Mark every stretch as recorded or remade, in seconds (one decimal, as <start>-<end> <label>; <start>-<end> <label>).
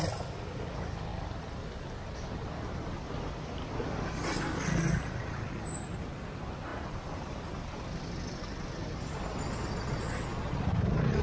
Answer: 0.0-10.3 recorded; 10.3-11.2 remade